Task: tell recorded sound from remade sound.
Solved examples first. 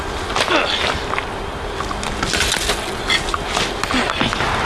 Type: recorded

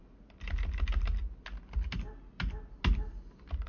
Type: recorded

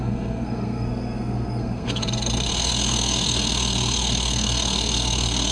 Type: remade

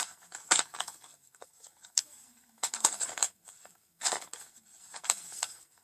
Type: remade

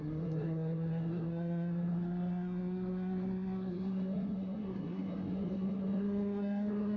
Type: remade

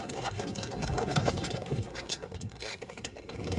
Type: remade